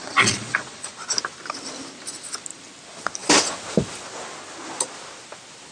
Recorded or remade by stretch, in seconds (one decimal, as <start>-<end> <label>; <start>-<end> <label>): 0.0-1.0 remade; 1.0-5.7 recorded